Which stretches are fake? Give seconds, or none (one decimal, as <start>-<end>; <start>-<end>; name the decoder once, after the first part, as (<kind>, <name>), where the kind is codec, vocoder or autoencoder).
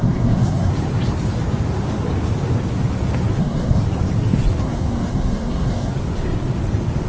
0.0-0.7 (codec, SNAC); 3.4-3.8; 4.6-5.9